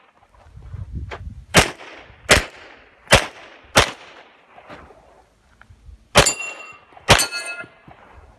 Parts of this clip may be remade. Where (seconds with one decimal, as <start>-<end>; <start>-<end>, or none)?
none